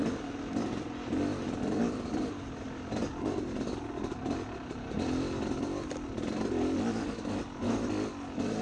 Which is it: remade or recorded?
recorded